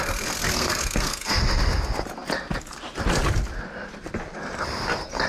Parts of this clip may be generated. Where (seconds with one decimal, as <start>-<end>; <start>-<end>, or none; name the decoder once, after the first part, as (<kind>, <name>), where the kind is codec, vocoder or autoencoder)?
0.5-1.4 (codec, SNAC)